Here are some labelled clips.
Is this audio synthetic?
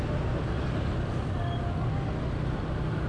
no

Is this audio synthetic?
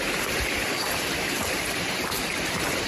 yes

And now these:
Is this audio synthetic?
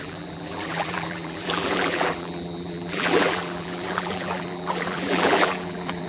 yes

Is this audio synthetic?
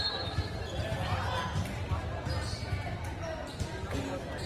no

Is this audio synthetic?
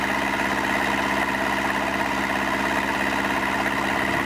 no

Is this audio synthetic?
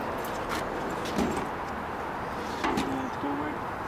no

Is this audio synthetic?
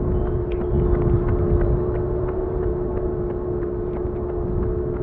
no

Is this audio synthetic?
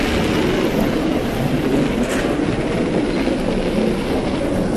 no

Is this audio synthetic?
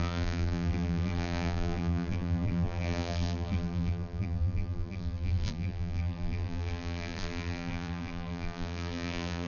yes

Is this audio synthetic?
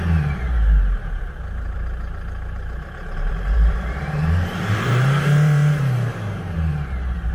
yes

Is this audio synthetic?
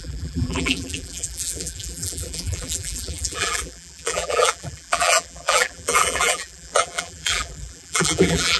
yes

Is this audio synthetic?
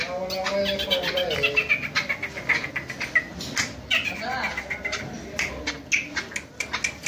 no